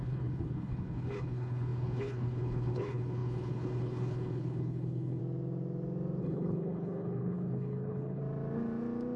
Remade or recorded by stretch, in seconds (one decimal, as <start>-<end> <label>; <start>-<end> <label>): 0.0-5.2 remade; 5.2-6.2 recorded; 6.2-8.2 remade; 8.2-9.2 recorded